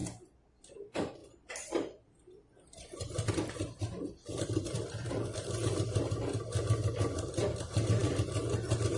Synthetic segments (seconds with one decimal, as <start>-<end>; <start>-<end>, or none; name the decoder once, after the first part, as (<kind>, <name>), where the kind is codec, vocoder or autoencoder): 1.2-6.1 (vocoder, BigVGAN v2)